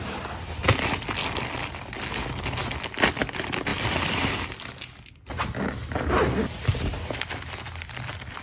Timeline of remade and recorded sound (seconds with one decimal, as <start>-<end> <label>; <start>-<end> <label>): 0.0-8.4 recorded

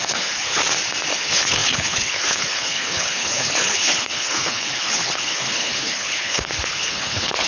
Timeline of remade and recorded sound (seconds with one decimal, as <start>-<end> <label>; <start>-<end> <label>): 0.0-0.6 remade; 0.6-1.1 recorded; 1.1-7.5 remade

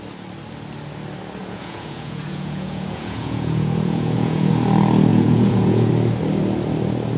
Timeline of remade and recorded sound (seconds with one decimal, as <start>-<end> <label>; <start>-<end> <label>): 0.0-1.4 recorded; 1.4-4.5 remade; 4.5-5.1 recorded; 5.1-5.9 remade; 5.9-7.2 recorded

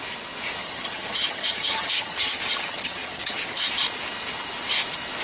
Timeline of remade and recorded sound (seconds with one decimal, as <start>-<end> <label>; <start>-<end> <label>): 0.0-0.6 recorded; 0.6-3.7 remade; 3.7-5.2 recorded

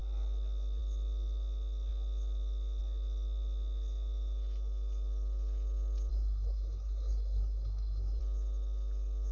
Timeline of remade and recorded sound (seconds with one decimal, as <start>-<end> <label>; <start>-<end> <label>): 0.0-6.1 recorded; 6.1-8.2 remade; 8.2-9.3 recorded

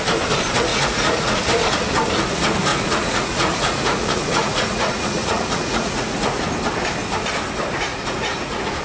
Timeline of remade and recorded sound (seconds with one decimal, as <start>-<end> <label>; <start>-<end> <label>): 0.0-0.7 recorded; 0.7-1.4 remade; 1.4-2.7 recorded; 2.7-6.4 remade; 6.4-7.9 recorded; 7.9-8.8 remade

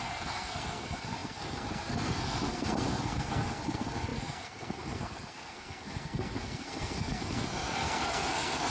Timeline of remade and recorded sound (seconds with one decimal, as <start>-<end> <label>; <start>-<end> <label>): 0.0-8.7 remade

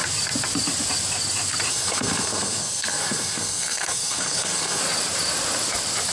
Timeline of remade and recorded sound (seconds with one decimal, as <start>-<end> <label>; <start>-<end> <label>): 0.0-1.7 recorded; 1.7-4.8 remade; 4.8-6.1 recorded